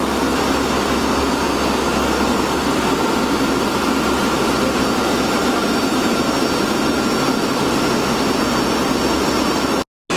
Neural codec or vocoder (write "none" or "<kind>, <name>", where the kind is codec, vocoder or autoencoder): none